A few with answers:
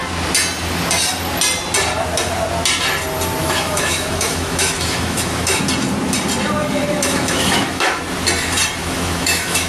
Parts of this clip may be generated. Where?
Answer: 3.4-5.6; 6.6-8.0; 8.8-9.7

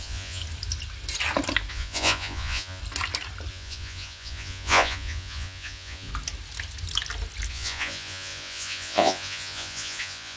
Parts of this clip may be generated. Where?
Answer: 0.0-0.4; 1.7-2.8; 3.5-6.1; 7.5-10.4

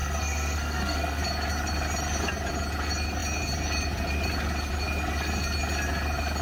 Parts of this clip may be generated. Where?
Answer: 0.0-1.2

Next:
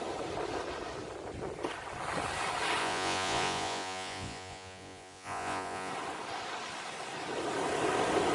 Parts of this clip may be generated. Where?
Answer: 2.8-5.9

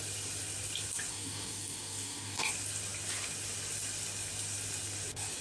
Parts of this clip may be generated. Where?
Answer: 1.1-2.5

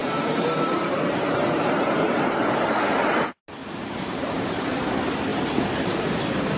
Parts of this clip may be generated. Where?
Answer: 0.0-2.4; 3.6-4.7; 5.3-6.6

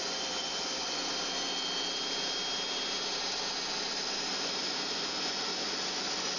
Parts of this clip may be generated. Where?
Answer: 0.0-1.0; 4.3-6.4

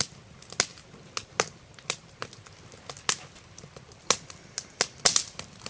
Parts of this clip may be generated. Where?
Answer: none